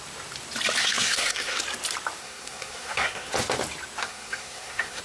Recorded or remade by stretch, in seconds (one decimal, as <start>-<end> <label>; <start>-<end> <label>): 0.0-0.8 recorded; 0.8-1.6 remade; 1.6-2.2 recorded; 2.2-3.3 remade; 3.3-4.0 recorded; 4.0-5.0 remade